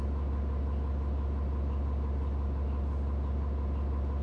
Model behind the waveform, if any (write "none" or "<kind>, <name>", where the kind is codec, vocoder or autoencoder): none